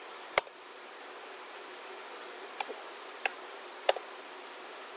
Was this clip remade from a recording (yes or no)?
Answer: yes